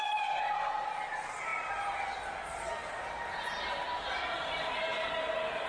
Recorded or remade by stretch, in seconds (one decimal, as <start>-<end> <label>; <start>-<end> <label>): 0.0-5.7 recorded